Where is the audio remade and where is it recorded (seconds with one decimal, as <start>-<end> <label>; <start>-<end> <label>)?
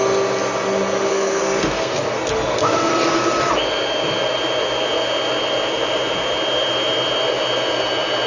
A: 0.0-1.1 recorded; 1.1-2.9 remade; 2.9-8.3 recorded